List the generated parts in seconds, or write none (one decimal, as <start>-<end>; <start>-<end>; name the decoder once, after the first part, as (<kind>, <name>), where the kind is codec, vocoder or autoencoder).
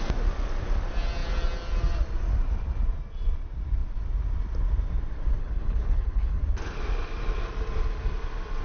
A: 5.4-6.4 (codec, HILCodec)